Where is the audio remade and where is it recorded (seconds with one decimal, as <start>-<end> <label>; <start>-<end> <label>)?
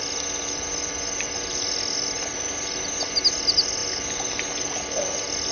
0.0-5.5 recorded